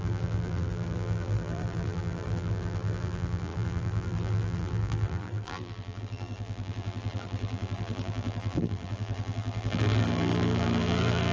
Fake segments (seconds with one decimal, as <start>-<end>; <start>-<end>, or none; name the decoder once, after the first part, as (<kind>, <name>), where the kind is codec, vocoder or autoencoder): 0.0-11.3 (vocoder, BigVGAN v2)